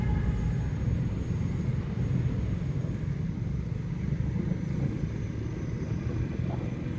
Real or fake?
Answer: real